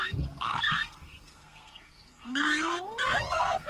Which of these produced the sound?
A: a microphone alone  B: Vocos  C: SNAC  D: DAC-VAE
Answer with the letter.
C